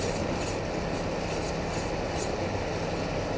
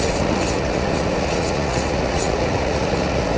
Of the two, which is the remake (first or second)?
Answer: second